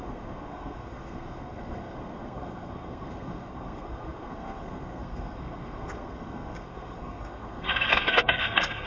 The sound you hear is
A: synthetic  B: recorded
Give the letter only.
A